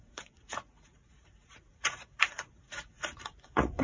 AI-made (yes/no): yes